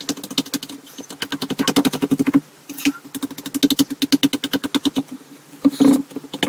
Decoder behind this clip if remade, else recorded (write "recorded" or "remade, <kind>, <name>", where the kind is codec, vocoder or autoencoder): recorded